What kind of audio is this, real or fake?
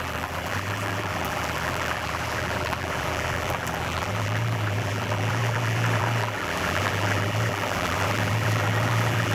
fake